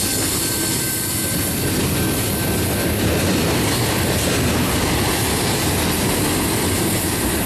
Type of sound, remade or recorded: recorded